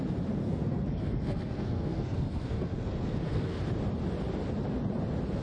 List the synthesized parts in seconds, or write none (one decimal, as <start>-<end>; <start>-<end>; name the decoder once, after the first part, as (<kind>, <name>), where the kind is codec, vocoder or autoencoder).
0.4-3.6 (codec, SNAC)